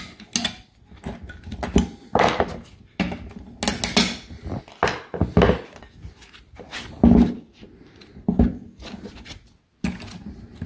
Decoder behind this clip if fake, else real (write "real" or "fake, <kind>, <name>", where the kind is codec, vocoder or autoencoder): real